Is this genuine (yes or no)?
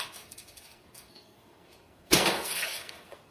no